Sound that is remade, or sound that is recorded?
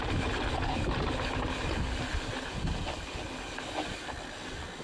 recorded